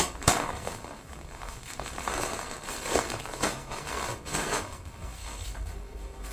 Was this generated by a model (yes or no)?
yes